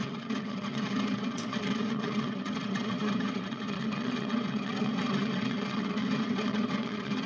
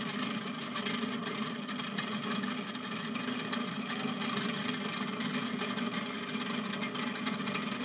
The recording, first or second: second